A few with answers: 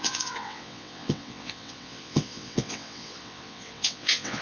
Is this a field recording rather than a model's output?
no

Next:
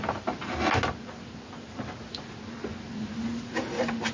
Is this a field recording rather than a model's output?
yes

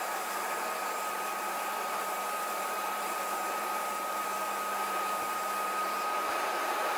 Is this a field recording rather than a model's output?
no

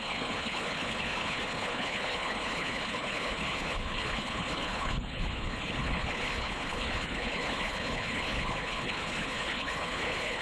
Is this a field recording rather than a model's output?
no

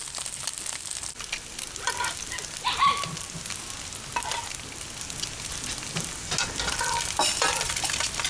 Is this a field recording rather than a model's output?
yes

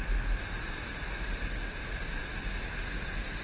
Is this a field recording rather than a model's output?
yes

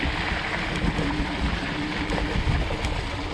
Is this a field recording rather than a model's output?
yes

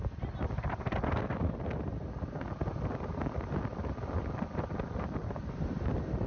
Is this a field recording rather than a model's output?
yes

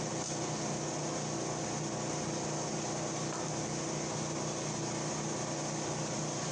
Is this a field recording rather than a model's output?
yes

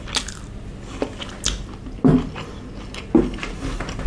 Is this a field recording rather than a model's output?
yes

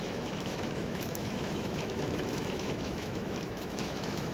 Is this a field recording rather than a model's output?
no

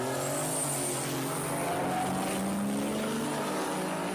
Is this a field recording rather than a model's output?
yes